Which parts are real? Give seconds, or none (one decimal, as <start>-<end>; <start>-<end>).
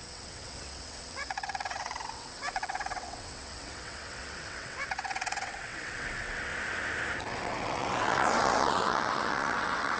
6.5-7.2